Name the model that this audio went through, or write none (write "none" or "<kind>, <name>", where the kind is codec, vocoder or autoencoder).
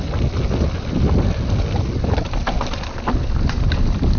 none